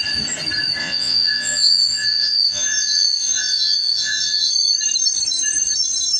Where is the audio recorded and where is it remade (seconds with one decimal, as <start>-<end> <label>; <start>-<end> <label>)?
0.0-0.8 recorded; 0.8-4.5 remade; 4.5-6.2 recorded